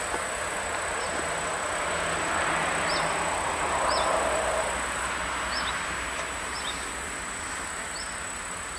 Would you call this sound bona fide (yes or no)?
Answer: yes